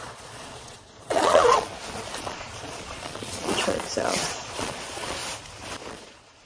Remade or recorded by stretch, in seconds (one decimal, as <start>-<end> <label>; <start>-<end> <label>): 0.0-1.7 remade; 1.7-2.2 recorded; 2.2-5.2 remade; 5.2-5.9 recorded; 5.9-6.5 remade

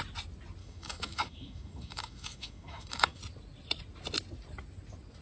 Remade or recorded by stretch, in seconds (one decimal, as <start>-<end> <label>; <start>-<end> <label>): 0.0-0.6 recorded; 0.6-3.2 remade; 3.2-5.2 recorded

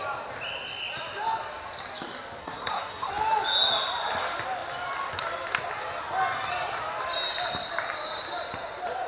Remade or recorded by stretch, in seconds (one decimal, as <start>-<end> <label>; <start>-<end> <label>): 0.0-2.4 recorded; 2.4-3.1 remade; 3.1-9.1 recorded